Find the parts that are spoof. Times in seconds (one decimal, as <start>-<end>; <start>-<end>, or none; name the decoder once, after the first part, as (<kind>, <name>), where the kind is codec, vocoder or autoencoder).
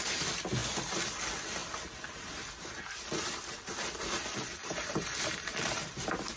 4.6-6.4 (vocoder, BigVGAN v2)